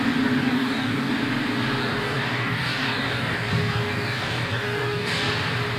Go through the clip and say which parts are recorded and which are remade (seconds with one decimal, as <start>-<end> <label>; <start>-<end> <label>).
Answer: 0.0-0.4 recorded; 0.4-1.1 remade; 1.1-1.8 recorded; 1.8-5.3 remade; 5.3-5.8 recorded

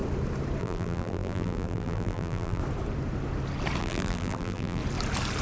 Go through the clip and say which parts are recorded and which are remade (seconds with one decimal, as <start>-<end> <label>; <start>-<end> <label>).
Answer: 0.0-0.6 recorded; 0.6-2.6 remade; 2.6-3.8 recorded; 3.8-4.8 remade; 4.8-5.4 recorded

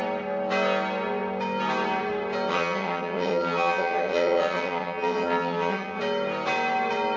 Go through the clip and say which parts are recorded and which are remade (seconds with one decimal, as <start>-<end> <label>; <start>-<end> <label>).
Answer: 0.0-2.5 recorded; 2.5-6.0 remade; 6.0-7.2 recorded

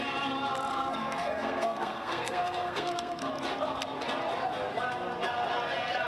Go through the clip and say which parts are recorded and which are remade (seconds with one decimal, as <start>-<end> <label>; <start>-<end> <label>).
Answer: 0.0-0.7 recorded; 0.7-3.3 remade; 3.3-6.1 recorded

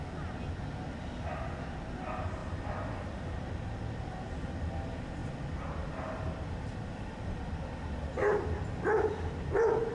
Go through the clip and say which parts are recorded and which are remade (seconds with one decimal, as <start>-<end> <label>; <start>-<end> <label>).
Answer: 0.0-2.4 recorded; 2.4-4.2 remade; 4.2-5.2 recorded; 5.2-9.1 remade; 9.1-9.9 recorded

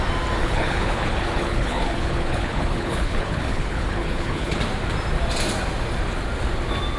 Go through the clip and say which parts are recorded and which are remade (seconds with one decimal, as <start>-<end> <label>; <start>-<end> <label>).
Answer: 0.0-0.4 recorded; 0.4-4.6 remade; 4.6-7.0 recorded